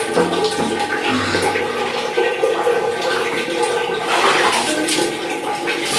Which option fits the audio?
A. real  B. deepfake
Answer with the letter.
A